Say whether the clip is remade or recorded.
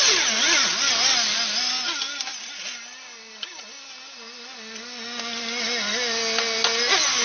recorded